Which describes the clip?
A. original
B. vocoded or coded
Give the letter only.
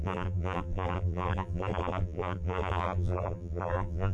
B